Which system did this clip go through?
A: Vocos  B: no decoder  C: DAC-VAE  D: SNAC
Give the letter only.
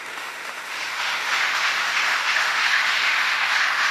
C